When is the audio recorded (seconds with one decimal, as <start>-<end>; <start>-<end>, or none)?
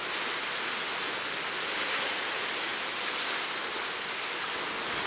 0.0-5.1